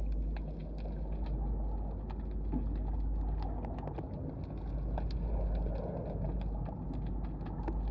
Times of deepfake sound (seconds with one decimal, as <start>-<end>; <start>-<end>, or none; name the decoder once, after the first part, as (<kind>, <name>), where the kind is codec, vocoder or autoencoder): none